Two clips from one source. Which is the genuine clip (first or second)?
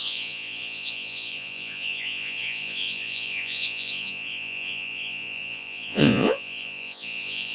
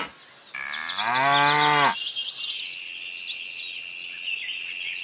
second